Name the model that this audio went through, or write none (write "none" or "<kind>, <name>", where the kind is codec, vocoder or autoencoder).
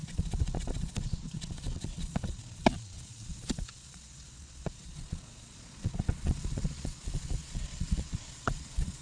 vocoder, Vocos